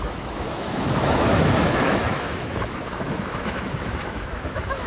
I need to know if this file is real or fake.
fake